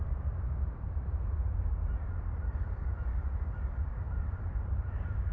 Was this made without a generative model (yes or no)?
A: no